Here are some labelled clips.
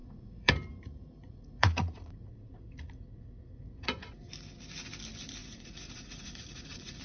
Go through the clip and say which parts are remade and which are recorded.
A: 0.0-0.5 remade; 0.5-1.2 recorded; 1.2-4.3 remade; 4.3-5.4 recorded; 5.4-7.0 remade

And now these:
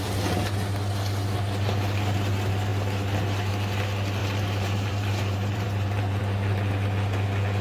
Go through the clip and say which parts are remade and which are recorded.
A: 0.0-4.2 recorded; 4.2-6.2 remade; 6.2-7.6 recorded

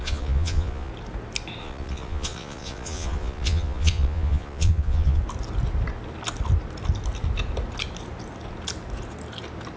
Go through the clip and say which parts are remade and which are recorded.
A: 0.0-0.9 remade; 0.9-1.6 recorded; 1.6-5.2 remade; 5.2-9.8 recorded

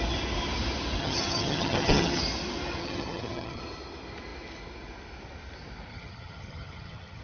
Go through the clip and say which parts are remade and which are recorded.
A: 0.0-1.0 recorded; 1.0-2.2 remade; 2.2-2.8 recorded; 2.8-3.6 remade; 3.6-5.9 recorded; 5.9-7.2 remade

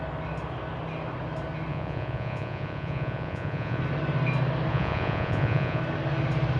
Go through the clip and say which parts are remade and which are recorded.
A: 0.0-1.7 recorded; 1.7-3.8 remade; 3.8-4.7 recorded; 4.7-5.8 remade; 5.8-6.6 recorded

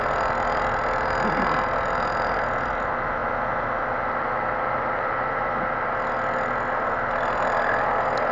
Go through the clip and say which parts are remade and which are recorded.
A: 0.0-8.3 recorded